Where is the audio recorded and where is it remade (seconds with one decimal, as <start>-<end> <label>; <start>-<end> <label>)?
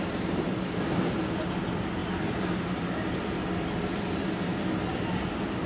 0.0-5.7 recorded